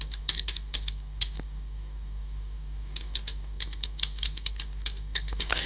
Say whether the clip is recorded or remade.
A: remade